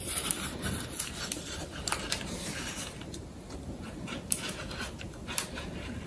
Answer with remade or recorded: remade